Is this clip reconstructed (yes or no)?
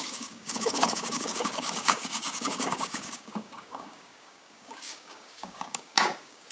yes